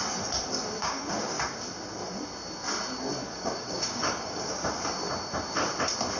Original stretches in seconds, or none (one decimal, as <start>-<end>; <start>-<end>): 0.0-0.8; 1.4-3.2; 4.7-6.2